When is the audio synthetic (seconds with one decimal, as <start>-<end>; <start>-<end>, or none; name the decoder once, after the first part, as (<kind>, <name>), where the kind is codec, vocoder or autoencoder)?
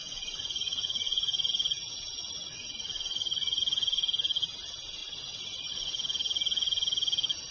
0.0-1.5 (vocoder, Vocos); 2.2-3.6; 5.0-5.9